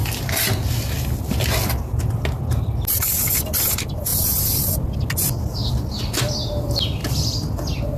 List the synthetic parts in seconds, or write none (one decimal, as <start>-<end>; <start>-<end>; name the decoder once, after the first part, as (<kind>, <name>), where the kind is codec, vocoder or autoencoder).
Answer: none